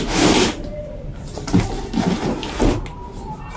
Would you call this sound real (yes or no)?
yes